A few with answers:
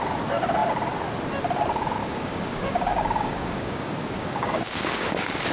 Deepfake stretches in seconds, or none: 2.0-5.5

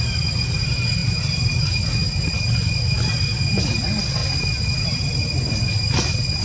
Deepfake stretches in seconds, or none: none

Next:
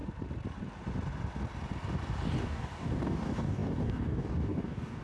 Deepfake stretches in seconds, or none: 2.4-5.0